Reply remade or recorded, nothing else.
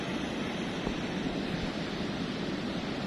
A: remade